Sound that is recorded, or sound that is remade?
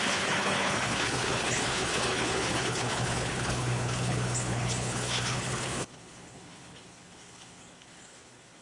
remade